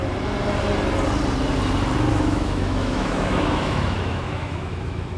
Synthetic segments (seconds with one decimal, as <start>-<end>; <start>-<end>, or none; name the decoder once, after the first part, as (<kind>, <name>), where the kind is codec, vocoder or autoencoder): 2.1-5.2 (autoencoder, DAC-VAE)